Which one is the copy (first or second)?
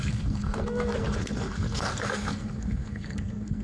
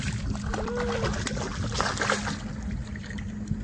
first